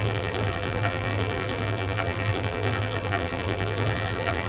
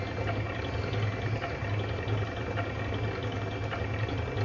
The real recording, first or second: second